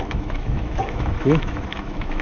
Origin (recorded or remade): remade